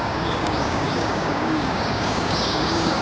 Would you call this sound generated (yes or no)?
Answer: yes